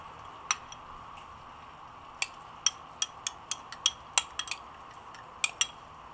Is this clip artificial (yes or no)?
no